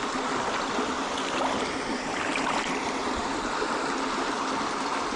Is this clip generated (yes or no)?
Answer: no